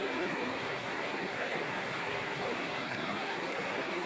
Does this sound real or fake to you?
fake